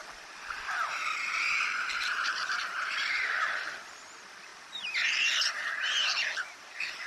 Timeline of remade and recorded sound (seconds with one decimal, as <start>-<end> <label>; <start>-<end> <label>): 0.0-4.5 remade; 4.5-6.6 recorded; 6.6-7.1 remade